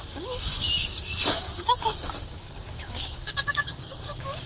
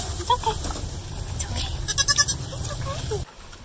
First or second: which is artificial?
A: first